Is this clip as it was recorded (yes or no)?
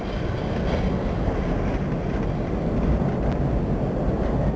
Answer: yes